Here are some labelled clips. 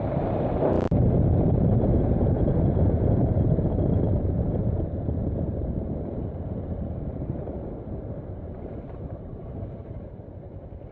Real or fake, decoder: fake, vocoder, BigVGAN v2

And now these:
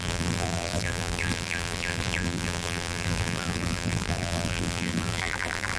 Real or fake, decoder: fake, vocoder, BigVGAN v2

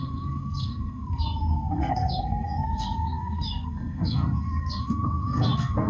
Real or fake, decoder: fake, codec, SNAC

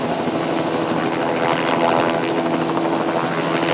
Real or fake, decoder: real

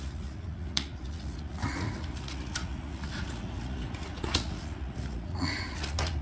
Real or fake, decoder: fake, vocoder, Vocos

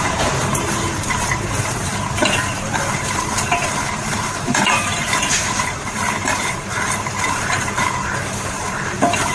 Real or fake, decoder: fake, vocoder, BigVGAN v2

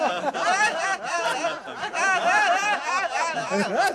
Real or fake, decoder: real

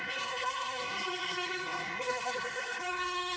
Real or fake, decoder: fake, codec, SNAC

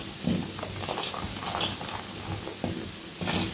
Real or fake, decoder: real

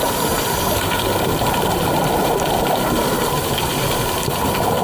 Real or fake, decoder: real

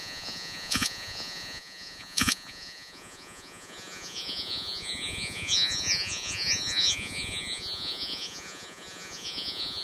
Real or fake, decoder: fake, vocoder, Vocos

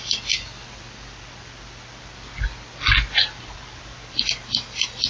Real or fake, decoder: real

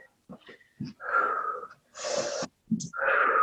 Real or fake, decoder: real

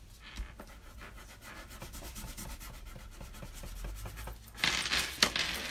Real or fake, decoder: real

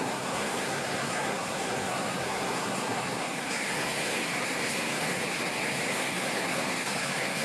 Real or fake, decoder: fake, codec, SNAC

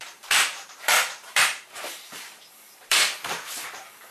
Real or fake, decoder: fake, vocoder, BigVGAN v2